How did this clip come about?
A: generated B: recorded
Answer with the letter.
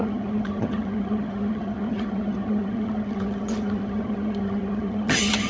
A